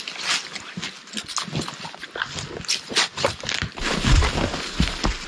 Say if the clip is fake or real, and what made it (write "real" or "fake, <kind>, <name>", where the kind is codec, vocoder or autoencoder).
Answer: real